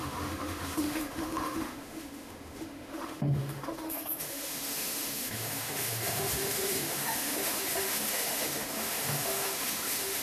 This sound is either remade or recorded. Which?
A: remade